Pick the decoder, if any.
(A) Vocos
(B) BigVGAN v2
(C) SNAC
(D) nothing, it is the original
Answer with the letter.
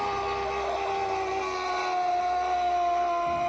D